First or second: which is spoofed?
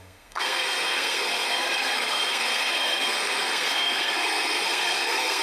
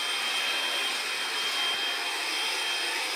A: first